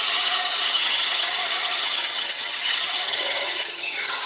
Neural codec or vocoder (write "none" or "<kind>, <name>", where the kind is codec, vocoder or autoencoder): vocoder, HiFi-GAN